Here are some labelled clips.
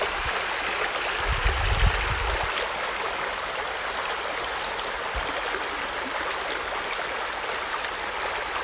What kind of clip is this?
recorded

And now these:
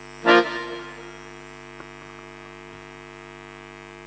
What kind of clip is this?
recorded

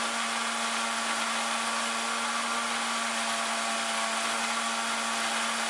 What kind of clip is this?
recorded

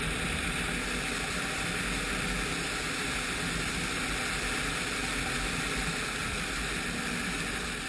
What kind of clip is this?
recorded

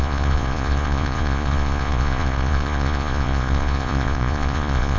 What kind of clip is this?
remade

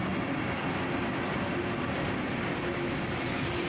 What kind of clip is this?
remade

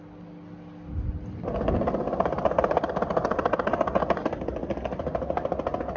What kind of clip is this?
recorded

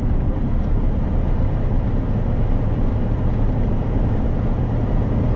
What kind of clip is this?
remade